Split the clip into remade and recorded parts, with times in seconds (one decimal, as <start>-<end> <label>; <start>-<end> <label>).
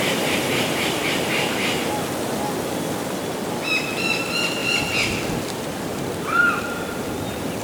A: 0.0-7.6 recorded